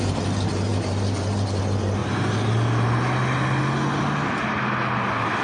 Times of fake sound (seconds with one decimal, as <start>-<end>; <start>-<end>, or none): none